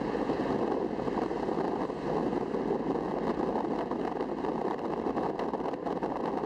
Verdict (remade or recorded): recorded